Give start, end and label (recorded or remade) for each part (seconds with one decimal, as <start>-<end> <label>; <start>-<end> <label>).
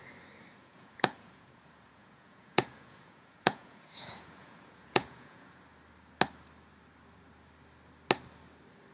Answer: 0.0-0.6 recorded; 0.6-5.6 remade; 5.6-8.9 recorded